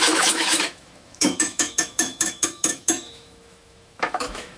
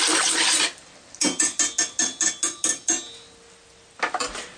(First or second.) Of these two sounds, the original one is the second